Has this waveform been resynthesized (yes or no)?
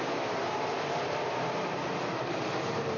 yes